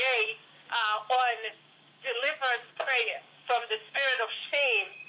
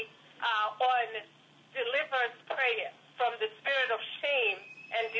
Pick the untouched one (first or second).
second